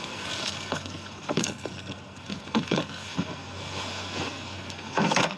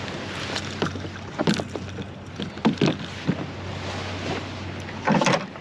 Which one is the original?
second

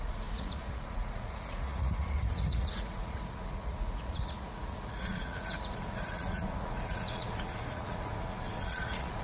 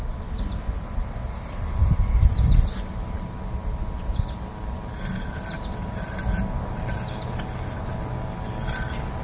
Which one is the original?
second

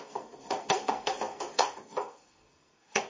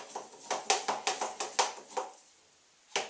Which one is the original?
second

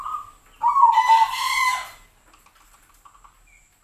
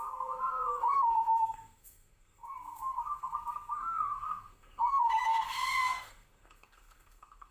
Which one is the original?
first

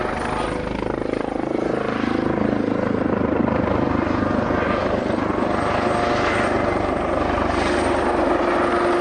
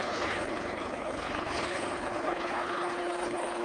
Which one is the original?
first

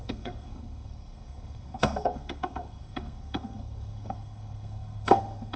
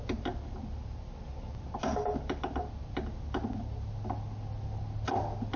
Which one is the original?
second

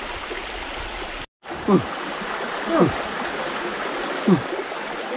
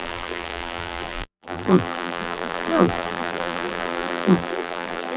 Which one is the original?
first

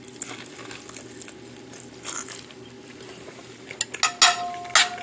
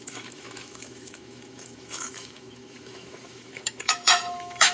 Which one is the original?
first